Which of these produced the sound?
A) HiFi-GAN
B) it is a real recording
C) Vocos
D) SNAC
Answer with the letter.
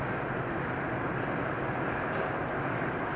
B